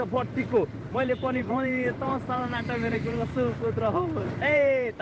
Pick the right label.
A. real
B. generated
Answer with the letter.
B